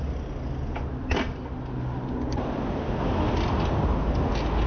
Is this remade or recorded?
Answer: recorded